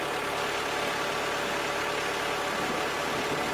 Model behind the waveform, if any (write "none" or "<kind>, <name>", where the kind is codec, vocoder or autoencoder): none